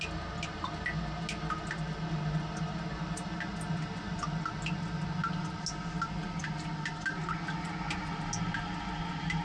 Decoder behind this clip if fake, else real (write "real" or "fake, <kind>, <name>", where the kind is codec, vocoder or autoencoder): real